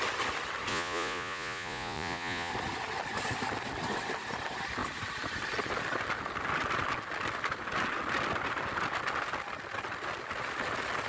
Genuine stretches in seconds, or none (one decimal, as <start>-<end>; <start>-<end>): 0.0-0.7; 2.5-11.1